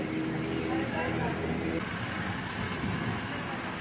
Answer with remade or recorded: recorded